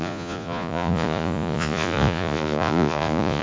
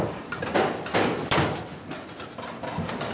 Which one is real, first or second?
second